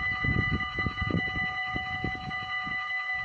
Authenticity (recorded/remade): remade